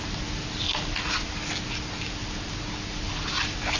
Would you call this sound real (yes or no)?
yes